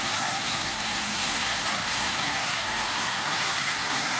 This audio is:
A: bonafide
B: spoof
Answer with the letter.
B